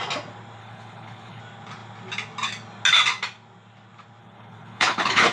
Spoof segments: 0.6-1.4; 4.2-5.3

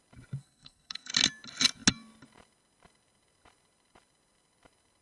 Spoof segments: 0.4-1.1

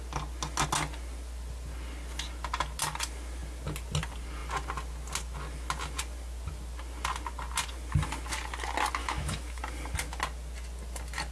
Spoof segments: 9.0-9.6

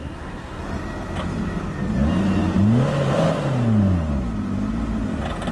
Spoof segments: 0.0-0.6

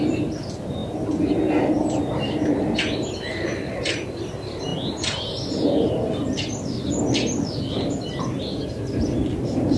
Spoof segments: none

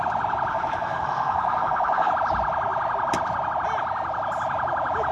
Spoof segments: 0.5-2.1

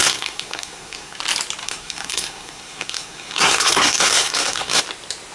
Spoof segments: 0.0-1.2; 1.6-4.8